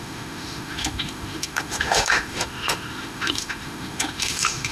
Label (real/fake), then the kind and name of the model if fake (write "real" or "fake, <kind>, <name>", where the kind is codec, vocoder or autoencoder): fake, autoencoder, DAC-VAE